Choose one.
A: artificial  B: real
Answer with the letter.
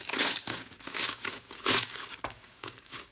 A